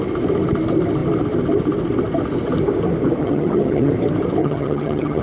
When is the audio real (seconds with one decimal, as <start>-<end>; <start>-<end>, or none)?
0.0-3.2; 3.9-4.4